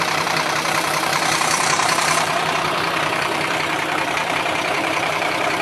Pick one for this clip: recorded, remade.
remade